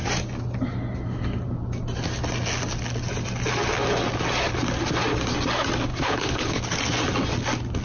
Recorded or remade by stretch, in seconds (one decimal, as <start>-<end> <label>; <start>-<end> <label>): 0.0-5.9 recorded; 5.9-6.6 remade; 6.6-7.8 recorded